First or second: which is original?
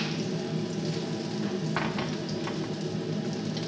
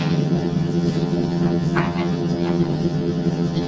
first